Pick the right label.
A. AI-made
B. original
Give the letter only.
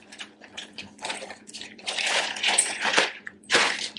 A